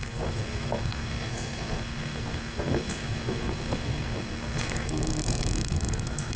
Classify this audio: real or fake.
fake